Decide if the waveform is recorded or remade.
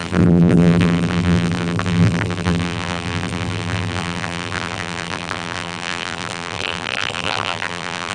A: remade